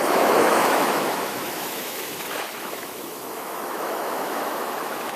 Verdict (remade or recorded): remade